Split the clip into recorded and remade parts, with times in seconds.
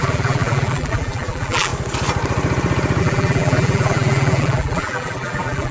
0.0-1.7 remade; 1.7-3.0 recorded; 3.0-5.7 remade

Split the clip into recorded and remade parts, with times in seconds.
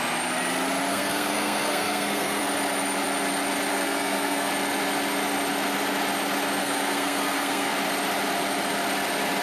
0.0-0.9 recorded; 0.9-2.4 remade; 2.4-3.7 recorded; 3.7-4.5 remade; 4.5-6.6 recorded; 6.6-7.7 remade; 7.7-9.4 recorded